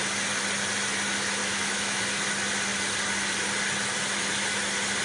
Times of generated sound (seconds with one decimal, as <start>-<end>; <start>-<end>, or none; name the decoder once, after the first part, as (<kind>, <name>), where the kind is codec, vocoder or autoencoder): 1.4-2.0 (autoencoder, DAC-VAE)